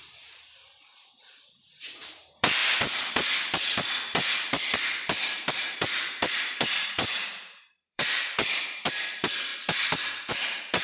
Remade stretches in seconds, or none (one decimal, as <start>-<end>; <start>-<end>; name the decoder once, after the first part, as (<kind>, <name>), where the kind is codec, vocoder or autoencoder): 0.0-2.6 (vocoder, BigVGAN v2); 5.5-10.8